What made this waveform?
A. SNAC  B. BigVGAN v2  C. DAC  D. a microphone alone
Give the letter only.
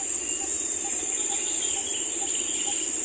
B